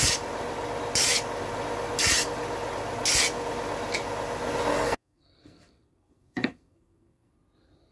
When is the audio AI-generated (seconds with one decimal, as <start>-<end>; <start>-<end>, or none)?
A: 4.7-7.3